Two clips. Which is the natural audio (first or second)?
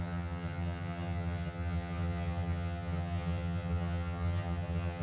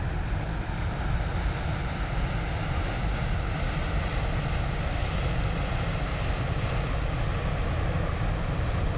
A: second